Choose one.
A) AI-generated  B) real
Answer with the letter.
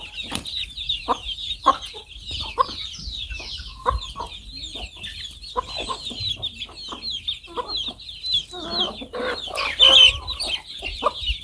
B